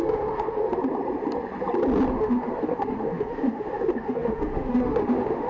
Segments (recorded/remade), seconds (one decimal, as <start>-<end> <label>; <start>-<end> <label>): 0.0-0.8 remade; 0.8-2.1 recorded; 2.1-5.5 remade